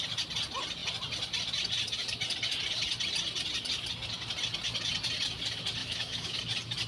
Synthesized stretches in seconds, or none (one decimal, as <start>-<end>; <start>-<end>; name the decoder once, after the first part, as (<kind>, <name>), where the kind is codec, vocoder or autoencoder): 5.8-6.4 (autoencoder, DAC-VAE)